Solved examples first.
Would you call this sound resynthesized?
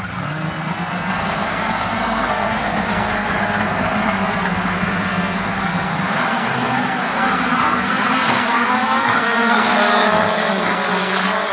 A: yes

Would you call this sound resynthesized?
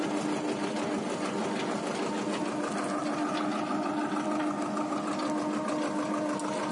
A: no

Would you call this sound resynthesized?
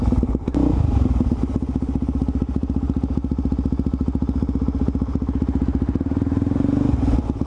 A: no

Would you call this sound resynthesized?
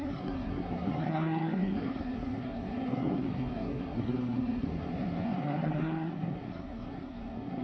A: yes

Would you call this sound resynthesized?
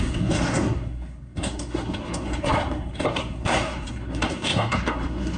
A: yes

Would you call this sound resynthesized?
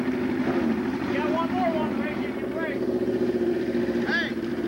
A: no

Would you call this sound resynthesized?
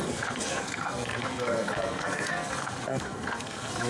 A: yes